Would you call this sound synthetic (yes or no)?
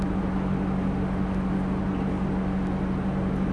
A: no